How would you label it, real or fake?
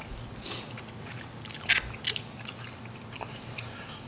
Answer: real